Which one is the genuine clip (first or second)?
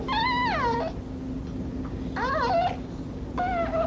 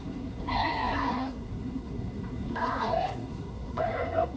first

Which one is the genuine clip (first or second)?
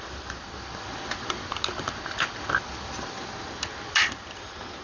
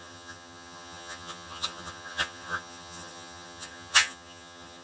first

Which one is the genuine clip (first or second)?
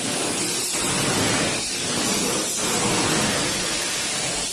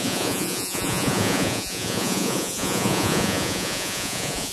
first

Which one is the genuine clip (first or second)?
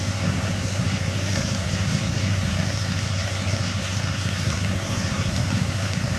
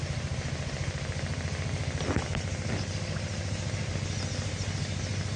second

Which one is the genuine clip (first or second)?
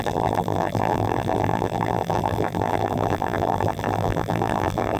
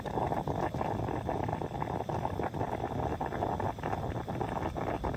second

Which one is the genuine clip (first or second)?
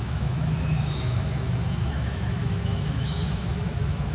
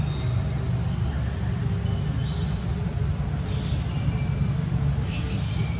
second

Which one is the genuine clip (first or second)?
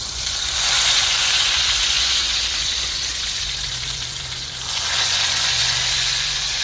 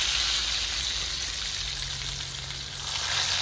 second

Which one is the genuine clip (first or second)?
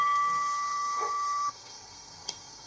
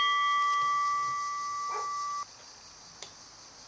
second